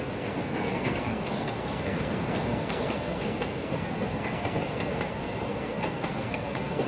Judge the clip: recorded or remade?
remade